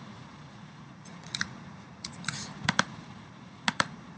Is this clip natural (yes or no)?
no